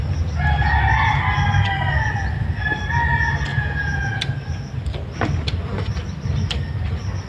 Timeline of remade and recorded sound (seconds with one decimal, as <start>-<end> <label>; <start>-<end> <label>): 0.0-3.5 recorded; 3.5-4.2 remade; 4.2-7.3 recorded